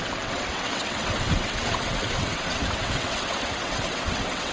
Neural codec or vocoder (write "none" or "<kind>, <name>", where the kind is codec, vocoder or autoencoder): vocoder, WaveNeXt